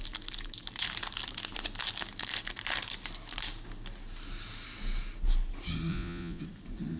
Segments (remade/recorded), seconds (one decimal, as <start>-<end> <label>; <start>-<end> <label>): 0.0-5.9 recorded; 5.9-6.4 remade; 6.4-7.0 recorded